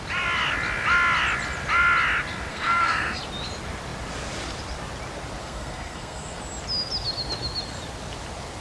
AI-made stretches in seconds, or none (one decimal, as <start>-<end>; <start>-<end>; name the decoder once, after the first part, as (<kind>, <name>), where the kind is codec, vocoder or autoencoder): 2.5-3.2 (codec, SNAC); 5.4-6.4